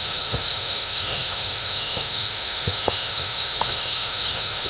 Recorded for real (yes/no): no